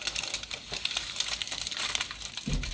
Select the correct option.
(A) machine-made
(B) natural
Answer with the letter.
B